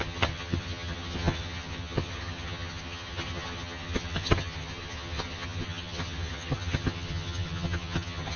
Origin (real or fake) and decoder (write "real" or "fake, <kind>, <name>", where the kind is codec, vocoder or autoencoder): fake, vocoder, HiFi-GAN